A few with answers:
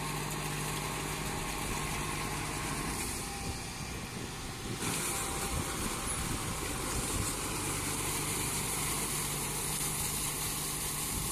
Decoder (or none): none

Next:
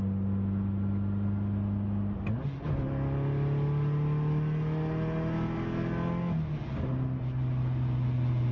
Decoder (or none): none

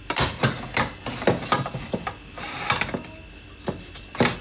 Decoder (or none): none